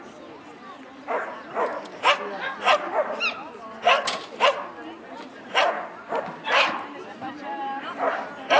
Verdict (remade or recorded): recorded